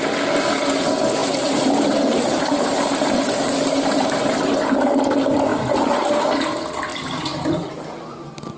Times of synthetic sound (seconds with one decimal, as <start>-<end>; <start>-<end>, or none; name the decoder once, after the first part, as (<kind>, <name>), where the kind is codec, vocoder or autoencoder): 1.2-4.6 (vocoder, BigVGAN v2); 5.5-6.0; 6.9-7.8